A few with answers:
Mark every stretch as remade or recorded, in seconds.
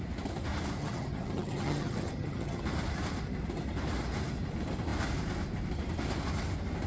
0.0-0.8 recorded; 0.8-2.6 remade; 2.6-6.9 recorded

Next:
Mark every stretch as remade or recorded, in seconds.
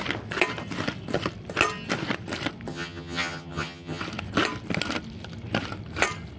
0.0-2.7 recorded; 2.7-4.0 remade; 4.0-6.4 recorded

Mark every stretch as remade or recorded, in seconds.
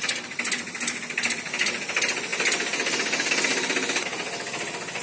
0.0-5.0 recorded